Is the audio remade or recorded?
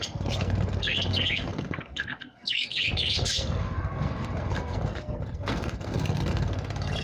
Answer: remade